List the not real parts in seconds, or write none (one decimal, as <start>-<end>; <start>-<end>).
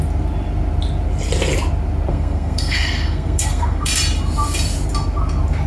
2.1-3.9